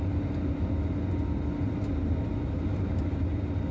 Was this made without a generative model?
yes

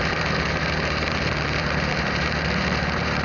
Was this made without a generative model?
no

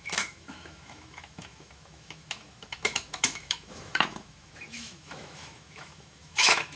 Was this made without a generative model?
no